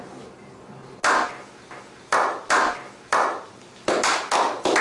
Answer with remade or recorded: recorded